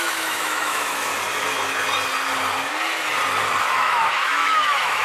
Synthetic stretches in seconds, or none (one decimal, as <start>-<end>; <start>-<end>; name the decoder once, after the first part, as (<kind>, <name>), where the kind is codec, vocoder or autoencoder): 0.0-1.1 (autoencoder, DAC-VAE); 3.6-5.0